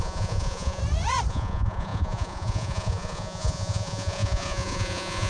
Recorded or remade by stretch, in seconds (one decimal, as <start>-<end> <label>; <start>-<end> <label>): 0.0-0.8 remade; 0.8-1.3 recorded; 1.3-5.3 remade